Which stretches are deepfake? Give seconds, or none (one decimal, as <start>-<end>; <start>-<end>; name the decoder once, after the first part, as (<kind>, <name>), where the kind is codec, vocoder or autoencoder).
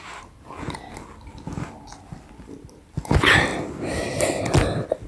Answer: none